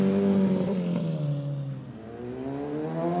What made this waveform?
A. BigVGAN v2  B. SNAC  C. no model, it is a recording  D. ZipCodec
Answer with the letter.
C